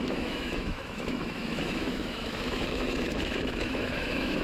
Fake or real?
fake